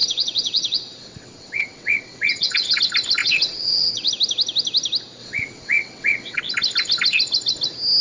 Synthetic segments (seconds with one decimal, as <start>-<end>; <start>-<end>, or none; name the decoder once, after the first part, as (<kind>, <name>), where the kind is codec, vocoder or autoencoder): 0.0-2.8 (vocoder, WaveNeXt); 3.2-4.1; 5.2-6.4